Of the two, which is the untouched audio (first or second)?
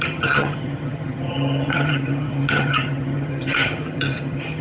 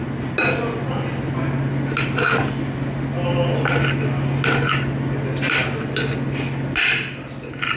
second